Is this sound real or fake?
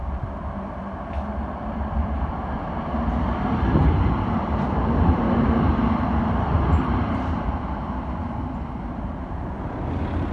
fake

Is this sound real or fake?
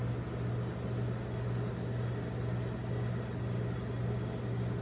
real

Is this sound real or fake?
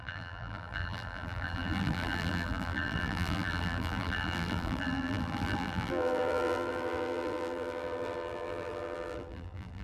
fake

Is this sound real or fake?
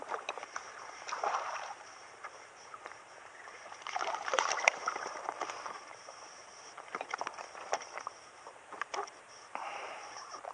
fake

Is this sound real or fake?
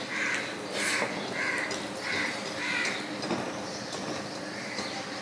fake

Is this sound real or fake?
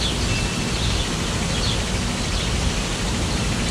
real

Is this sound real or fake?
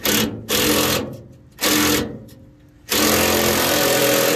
real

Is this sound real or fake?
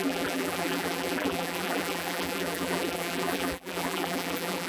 fake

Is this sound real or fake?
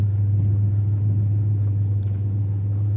real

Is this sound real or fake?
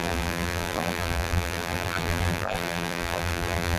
fake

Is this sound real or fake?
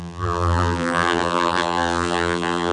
fake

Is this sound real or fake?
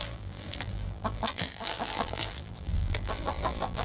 fake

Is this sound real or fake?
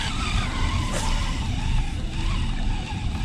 real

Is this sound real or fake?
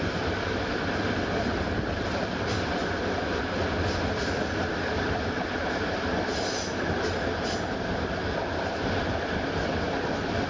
real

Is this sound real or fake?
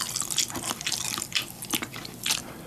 fake